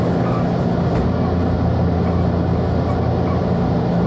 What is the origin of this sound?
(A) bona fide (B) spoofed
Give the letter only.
A